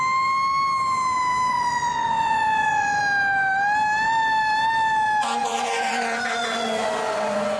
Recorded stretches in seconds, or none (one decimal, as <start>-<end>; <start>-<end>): 0.0-1.5; 3.0-5.4

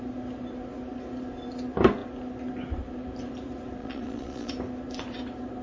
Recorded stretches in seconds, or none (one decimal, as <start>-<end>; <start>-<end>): 0.0-3.8; 4.5-5.6

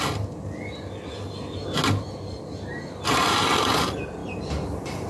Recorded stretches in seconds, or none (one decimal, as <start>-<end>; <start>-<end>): 0.0-5.1

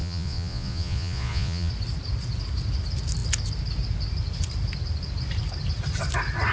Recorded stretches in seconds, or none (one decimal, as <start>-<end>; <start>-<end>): 1.7-6.5

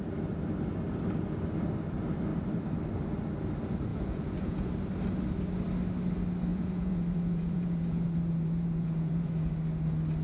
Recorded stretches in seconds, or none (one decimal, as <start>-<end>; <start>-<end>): 0.0-3.9; 4.7-6.5; 9.5-10.2

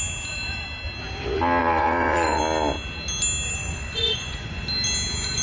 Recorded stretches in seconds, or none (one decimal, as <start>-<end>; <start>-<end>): 0.0-1.6; 2.4-3.6; 4.6-5.4

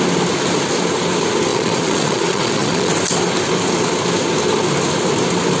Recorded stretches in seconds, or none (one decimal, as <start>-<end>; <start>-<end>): 0.0-1.5; 2.9-5.6